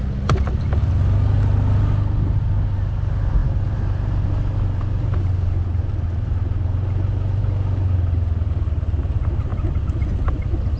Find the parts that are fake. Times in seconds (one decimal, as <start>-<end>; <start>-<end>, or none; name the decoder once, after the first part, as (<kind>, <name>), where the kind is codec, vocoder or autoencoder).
none